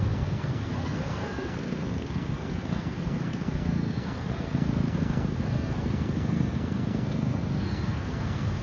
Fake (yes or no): yes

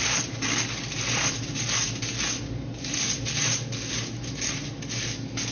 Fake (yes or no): no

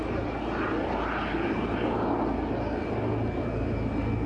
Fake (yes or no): no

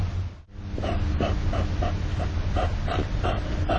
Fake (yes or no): no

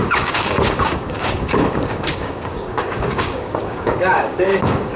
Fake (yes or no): yes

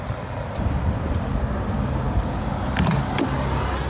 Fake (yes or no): no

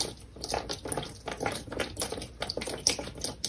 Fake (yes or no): no